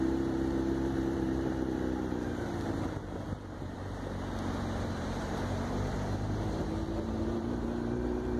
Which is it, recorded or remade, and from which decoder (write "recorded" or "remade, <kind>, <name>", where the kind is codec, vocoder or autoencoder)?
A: remade, vocoder, BigVGAN v2